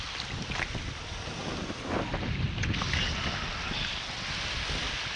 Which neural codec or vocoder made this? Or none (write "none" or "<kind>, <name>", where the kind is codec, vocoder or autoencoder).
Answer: none